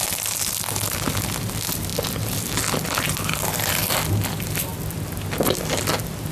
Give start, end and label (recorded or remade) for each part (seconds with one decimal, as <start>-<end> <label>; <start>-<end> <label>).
0.0-6.3 recorded